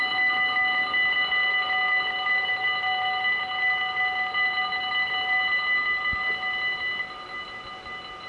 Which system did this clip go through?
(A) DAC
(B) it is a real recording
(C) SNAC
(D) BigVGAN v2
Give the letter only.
B